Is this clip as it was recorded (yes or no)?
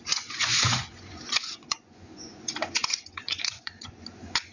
no